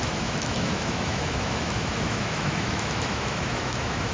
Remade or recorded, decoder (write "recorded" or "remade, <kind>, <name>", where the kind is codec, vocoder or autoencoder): remade, autoencoder, DAC-VAE